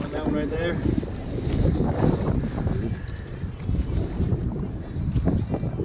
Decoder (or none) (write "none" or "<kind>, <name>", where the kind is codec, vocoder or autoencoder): none